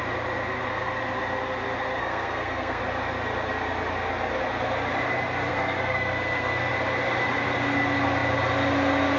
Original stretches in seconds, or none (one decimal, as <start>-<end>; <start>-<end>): 0.0-2.0; 2.8-5.5; 6.7-9.2

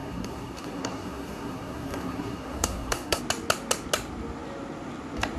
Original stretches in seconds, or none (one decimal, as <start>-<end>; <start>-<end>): 3.2-5.4

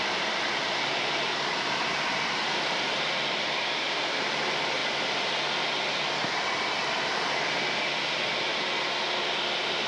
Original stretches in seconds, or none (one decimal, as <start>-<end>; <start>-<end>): 4.8-9.9

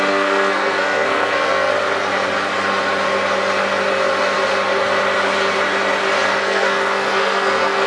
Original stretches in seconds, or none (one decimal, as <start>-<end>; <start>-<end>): 1.7-6.4

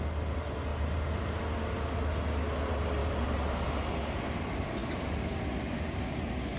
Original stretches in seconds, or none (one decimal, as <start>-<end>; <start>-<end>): 0.0-0.7; 1.4-3.0; 3.7-6.6

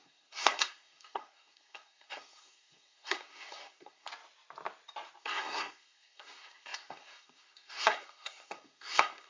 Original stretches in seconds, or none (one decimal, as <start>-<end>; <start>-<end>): 4.1-5.2